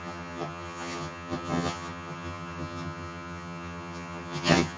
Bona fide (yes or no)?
no